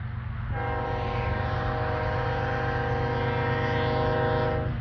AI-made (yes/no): no